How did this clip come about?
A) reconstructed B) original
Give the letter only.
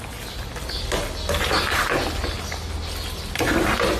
B